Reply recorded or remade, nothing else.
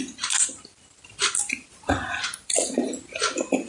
remade